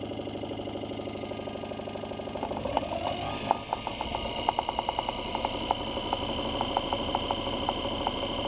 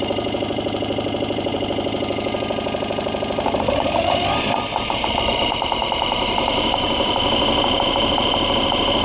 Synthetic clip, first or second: second